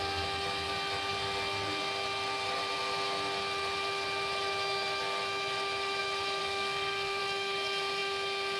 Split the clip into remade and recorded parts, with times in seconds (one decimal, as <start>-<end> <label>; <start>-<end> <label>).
0.0-6.4 recorded; 6.4-7.2 remade; 7.2-8.6 recorded